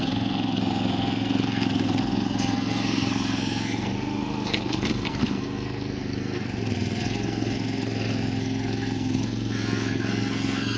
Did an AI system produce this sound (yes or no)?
yes